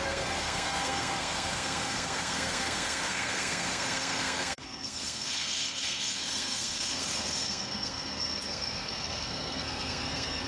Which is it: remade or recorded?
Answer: remade